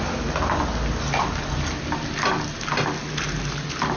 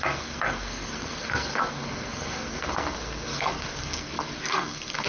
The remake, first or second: second